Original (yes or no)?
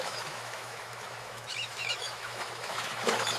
no